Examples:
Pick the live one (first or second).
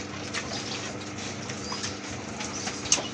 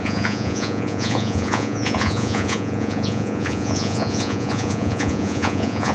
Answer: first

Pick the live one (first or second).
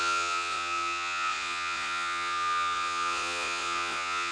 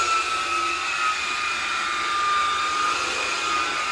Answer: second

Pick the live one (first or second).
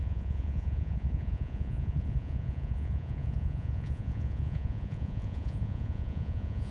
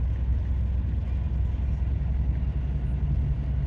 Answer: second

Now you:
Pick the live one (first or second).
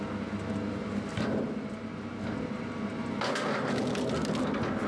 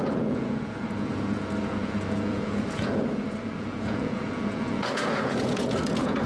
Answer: first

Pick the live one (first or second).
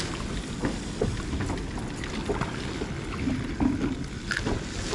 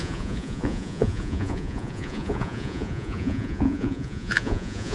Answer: first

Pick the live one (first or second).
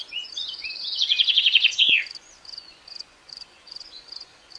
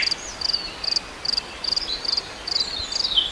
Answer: second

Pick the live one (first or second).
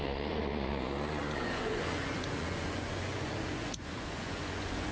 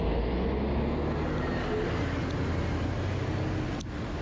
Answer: second